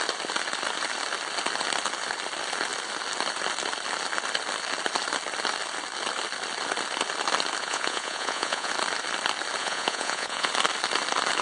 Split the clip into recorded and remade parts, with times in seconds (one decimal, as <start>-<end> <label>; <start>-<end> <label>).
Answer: 0.0-7.6 recorded; 7.6-8.7 remade; 8.7-9.6 recorded; 9.6-10.5 remade; 10.5-11.4 recorded